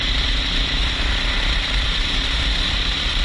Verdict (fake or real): fake